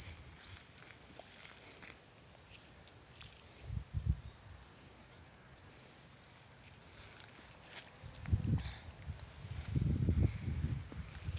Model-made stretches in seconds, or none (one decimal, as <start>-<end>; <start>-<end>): 4.7-5.7